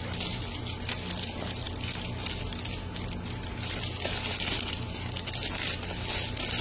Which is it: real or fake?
real